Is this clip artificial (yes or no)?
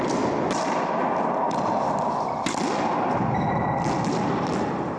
no